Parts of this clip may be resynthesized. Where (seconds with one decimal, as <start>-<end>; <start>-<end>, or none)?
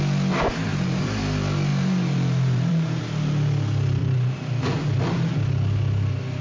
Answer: 0.7-1.2; 1.7-3.0; 4.0-4.5